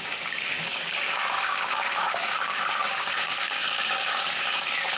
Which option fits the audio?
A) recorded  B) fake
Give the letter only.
B